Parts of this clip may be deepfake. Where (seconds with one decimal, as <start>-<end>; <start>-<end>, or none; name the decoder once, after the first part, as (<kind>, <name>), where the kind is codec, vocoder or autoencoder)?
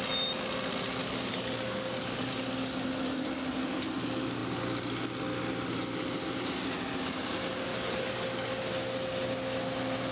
1.0-2.3 (codec, DAC); 7.7-8.7